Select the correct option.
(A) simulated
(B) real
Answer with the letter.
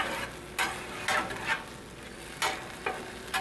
B